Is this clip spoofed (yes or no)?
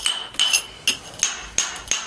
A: no